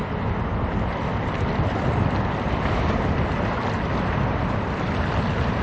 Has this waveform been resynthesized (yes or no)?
no